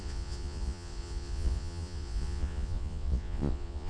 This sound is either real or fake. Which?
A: fake